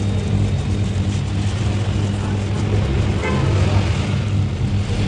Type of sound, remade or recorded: recorded